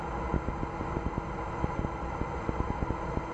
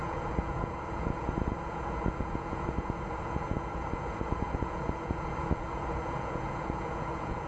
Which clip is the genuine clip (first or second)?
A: first